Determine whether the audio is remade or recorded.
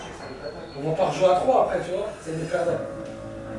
recorded